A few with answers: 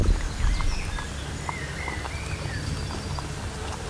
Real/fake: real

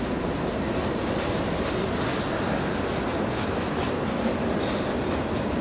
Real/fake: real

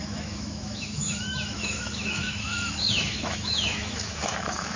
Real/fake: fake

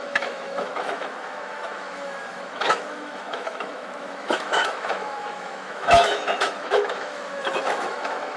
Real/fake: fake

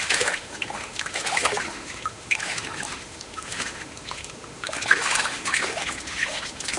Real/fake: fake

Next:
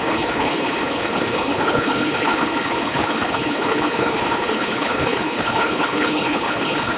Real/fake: fake